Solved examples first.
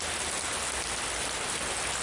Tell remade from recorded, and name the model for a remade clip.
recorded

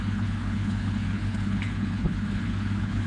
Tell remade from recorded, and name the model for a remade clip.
remade, codec, HILCodec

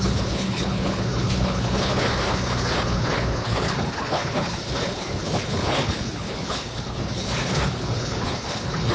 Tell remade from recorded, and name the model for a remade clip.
remade, codec, HILCodec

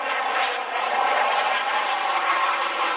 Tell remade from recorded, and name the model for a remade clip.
recorded